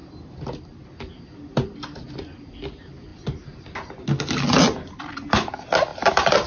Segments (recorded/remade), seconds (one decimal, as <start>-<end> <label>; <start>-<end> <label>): 0.0-6.5 recorded